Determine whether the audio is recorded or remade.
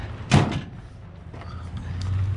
recorded